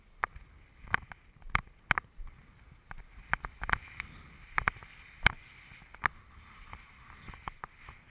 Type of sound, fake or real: real